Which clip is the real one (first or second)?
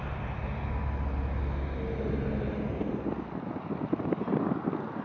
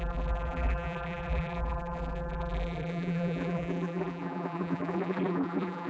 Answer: first